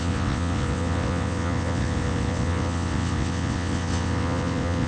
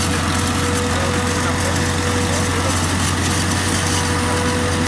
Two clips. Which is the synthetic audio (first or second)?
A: first